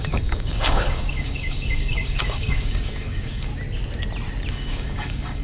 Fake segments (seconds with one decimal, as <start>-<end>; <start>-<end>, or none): 0.0-3.5; 4.5-5.4